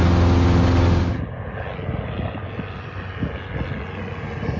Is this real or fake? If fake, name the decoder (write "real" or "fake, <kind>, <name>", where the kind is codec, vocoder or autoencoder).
real